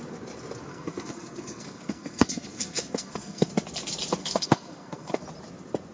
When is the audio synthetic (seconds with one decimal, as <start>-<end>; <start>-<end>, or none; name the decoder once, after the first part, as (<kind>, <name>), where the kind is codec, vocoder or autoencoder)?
0.7-3.5 (codec, SNAC); 4.2-5.2

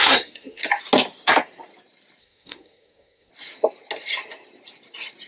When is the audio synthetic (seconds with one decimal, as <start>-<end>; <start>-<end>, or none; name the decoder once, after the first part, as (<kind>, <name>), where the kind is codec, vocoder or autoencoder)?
0.0-0.6 (codec, SNAC); 2.2-3.3

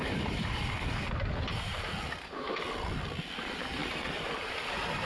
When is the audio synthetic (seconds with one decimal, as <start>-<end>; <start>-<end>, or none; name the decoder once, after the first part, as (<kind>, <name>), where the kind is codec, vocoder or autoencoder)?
none

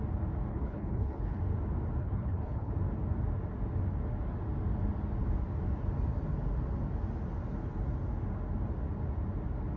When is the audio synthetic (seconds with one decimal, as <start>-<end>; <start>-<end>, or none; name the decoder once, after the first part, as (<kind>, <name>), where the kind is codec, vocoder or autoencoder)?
0.5-1.4 (codec, HILCodec); 2.0-2.7